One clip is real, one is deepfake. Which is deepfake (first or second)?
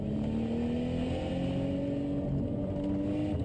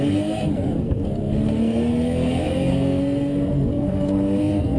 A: second